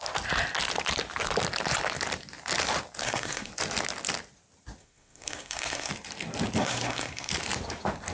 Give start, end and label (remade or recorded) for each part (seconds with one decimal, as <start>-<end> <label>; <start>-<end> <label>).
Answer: 0.0-3.0 recorded; 3.0-3.5 remade; 3.5-4.8 recorded; 4.8-5.9 remade; 5.9-6.6 recorded; 6.6-7.3 remade; 7.3-8.1 recorded